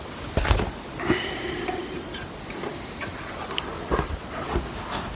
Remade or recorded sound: recorded